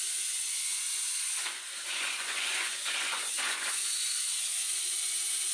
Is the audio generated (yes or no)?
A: yes